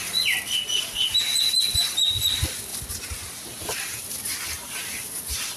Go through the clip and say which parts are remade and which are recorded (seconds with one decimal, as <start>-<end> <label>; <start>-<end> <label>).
0.0-5.6 recorded